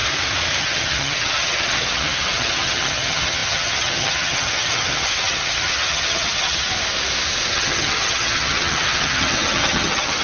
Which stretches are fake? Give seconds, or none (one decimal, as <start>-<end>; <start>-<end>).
0.6-6.7; 7.5-10.2